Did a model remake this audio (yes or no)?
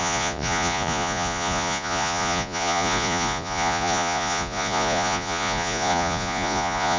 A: yes